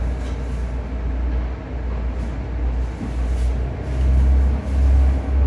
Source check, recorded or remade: recorded